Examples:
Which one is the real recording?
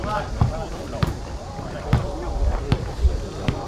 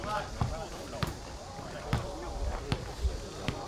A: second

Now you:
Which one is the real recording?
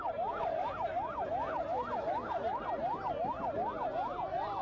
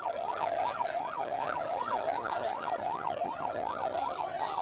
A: first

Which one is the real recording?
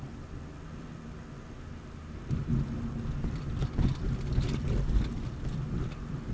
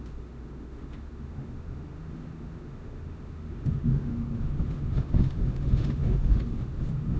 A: first